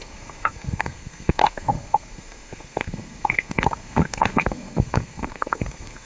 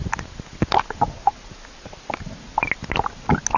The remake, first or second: first